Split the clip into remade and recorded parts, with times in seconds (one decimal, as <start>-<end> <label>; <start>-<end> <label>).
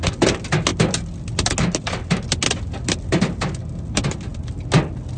0.0-5.2 recorded